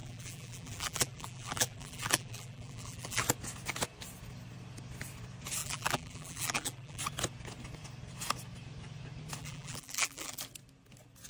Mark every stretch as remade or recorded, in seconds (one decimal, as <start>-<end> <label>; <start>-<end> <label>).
0.0-3.2 remade; 3.2-5.6 recorded; 5.6-7.0 remade; 7.0-9.4 recorded; 9.4-10.4 remade; 10.4-11.3 recorded